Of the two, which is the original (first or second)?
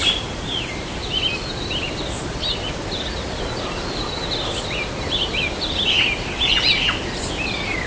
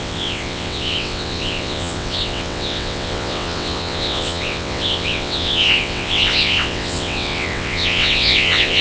first